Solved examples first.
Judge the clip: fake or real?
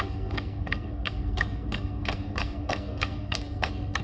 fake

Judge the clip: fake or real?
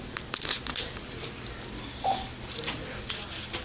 real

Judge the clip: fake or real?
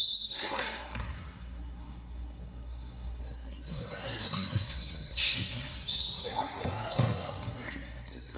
fake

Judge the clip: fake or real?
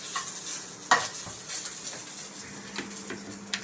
real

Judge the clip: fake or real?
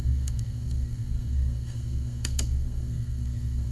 fake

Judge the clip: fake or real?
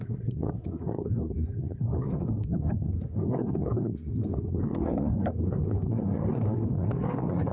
fake